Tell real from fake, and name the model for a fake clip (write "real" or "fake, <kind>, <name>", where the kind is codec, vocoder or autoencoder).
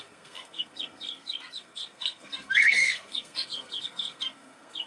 fake, codec, SNAC